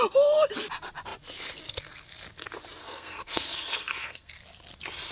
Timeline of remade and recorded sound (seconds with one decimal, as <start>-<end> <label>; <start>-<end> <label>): 0.0-2.8 recorded; 2.8-4.3 remade; 4.3-5.1 recorded